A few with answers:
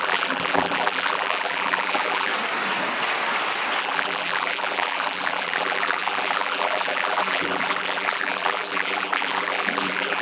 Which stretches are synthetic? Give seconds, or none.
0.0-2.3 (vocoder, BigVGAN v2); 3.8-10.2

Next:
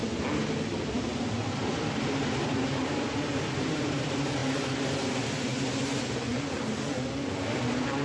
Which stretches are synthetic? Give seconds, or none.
0.6-8.0 (vocoder, BigVGAN v2)

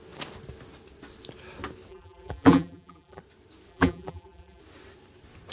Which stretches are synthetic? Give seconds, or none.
1.9-3.2 (vocoder, BigVGAN v2); 3.7-4.6

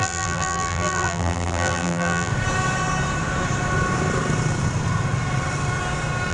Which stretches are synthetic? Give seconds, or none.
0.0-2.3 (vocoder, BigVGAN v2)

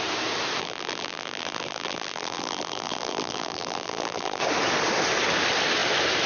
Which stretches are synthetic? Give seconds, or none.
0.6-4.4 (vocoder, BigVGAN v2)